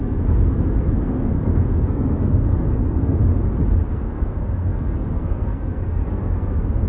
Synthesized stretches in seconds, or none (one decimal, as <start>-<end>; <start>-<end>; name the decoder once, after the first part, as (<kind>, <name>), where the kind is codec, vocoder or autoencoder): 0.0-3.2 (codec, SNAC); 3.9-6.9